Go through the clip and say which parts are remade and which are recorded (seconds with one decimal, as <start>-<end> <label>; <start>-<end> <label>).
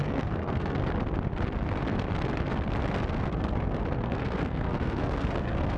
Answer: 0.0-0.8 remade; 0.8-3.1 recorded; 3.1-5.8 remade